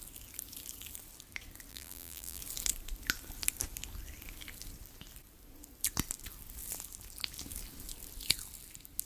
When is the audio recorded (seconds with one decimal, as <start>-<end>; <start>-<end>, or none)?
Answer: 0.0-1.7; 2.4-9.1